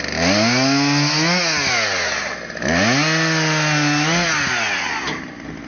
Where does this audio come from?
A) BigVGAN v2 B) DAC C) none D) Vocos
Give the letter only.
C